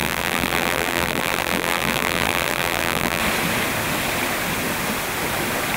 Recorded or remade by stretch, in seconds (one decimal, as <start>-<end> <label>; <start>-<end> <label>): 0.0-3.2 remade; 3.2-5.8 recorded